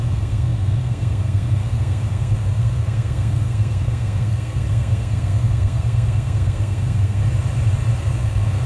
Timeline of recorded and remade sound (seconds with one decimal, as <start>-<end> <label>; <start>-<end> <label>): 0.0-7.2 remade; 7.2-8.0 recorded; 8.0-8.7 remade